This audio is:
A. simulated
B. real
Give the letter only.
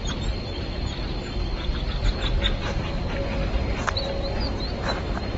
B